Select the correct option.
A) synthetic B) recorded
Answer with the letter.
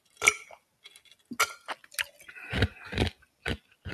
B